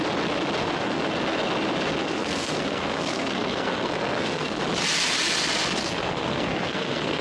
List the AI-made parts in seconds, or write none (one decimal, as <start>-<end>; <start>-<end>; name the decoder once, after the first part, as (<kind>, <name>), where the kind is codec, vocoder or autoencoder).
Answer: 0.6-1.1 (codec, SNAC); 2.0-4.6; 5.8-7.2